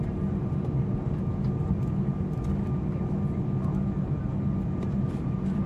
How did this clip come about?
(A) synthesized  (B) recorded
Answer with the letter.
B